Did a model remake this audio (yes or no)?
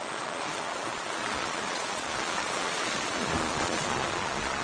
yes